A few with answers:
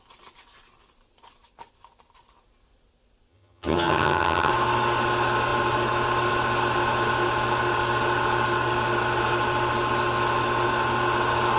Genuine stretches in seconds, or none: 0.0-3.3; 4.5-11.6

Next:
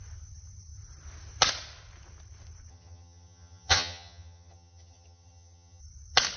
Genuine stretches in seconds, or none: 0.0-2.7; 5.8-6.4